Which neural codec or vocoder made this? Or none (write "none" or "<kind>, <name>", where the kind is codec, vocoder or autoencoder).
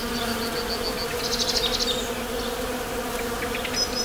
none